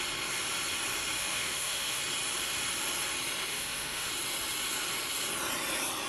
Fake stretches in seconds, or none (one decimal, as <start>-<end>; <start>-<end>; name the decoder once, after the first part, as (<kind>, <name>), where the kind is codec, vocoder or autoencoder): 1.2-2.0 (autoencoder, DAC-VAE); 3.5-4.1

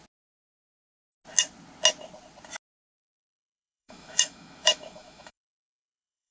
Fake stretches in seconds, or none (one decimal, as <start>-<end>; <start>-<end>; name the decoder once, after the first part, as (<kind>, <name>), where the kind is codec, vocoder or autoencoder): 2.9-6.3 (autoencoder, DAC-VAE)

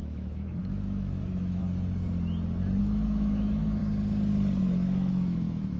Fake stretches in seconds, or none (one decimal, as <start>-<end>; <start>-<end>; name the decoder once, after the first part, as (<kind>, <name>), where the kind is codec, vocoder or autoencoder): 0.0-1.6 (autoencoder, DAC-VAE); 2.8-3.8; 4.6-5.8

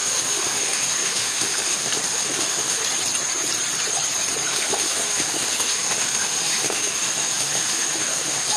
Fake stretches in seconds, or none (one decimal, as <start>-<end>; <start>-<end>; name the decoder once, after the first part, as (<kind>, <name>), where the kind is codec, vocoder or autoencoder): 0.0-2.8 (autoencoder, DAC-VAE); 4.5-8.6

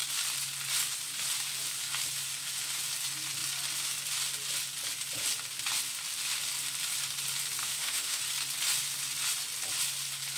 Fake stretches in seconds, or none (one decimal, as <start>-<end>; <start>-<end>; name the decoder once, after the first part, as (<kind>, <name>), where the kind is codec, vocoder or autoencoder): 7.6-8.2 (autoencoder, DAC-VAE)

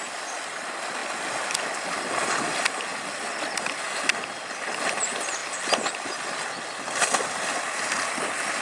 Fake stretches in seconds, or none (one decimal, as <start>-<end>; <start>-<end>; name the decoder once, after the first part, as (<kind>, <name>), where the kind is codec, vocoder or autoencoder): none